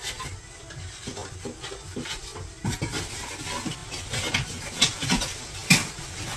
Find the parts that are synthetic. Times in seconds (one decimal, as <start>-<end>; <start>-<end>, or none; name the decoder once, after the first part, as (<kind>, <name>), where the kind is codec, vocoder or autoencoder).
1.2-3.1 (vocoder, BigVGAN v2); 5.6-6.4